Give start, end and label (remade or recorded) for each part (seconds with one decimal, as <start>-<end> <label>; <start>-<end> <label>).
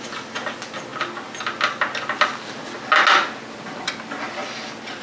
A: 0.0-5.0 recorded